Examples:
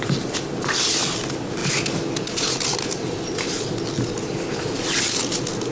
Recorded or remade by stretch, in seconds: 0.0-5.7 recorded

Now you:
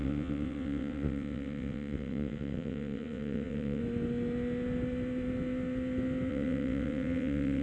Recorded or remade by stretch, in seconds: 0.0-3.8 remade; 3.8-6.3 recorded; 6.3-7.6 remade

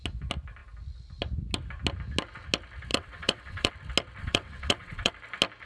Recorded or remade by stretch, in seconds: 0.0-2.9 recorded; 2.9-3.7 remade; 3.7-4.2 recorded; 4.2-5.1 remade; 5.1-5.7 recorded